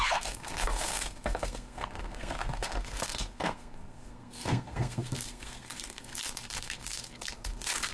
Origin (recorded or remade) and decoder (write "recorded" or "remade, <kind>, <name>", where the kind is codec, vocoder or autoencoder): remade, codec, SNAC